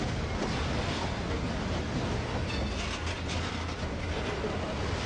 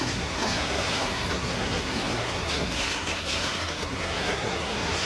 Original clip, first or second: first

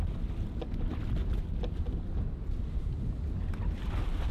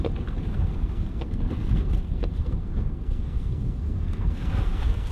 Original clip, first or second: first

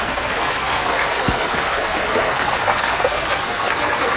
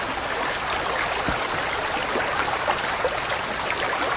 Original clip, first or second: second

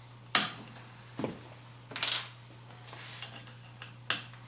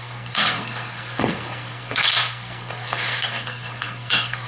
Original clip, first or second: first